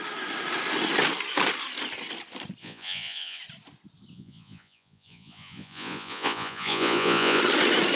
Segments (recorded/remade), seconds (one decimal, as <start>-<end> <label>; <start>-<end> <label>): 0.0-2.6 recorded; 2.6-3.4 remade; 3.4-4.1 recorded; 4.1-7.4 remade; 7.4-8.0 recorded